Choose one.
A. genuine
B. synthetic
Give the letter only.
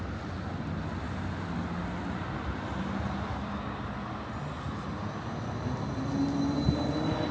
A